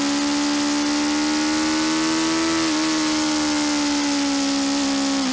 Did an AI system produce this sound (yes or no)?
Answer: no